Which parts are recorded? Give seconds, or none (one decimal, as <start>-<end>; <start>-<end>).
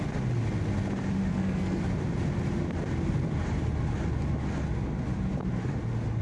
0.0-1.3; 1.8-6.2